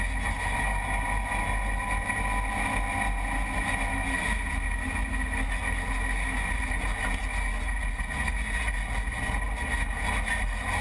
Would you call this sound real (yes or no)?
yes